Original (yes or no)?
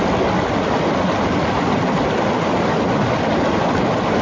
yes